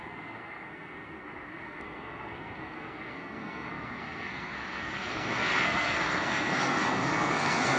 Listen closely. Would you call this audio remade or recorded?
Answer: remade